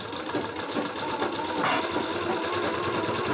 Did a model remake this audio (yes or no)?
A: no